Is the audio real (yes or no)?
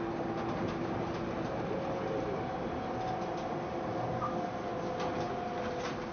yes